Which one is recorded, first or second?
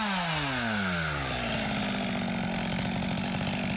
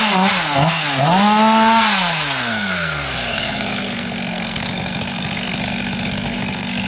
first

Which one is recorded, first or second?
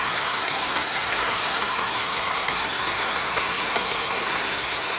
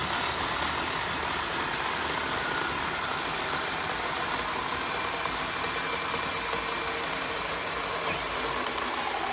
second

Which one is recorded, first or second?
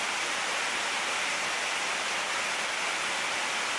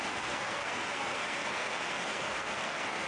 first